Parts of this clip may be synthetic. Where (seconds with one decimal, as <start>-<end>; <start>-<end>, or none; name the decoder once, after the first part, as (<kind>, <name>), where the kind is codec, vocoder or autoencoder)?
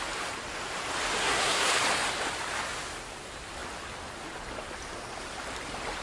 1.2-1.7 (codec, SNAC)